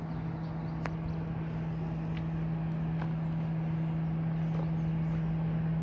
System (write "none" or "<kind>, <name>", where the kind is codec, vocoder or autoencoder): none